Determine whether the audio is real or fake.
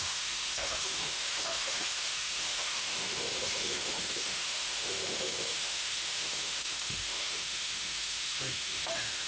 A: fake